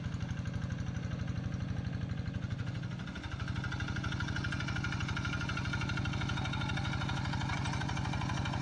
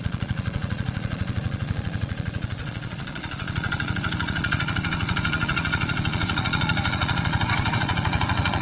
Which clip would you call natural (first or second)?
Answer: first